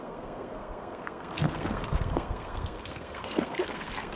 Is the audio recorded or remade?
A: remade